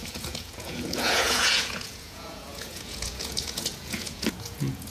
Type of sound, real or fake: fake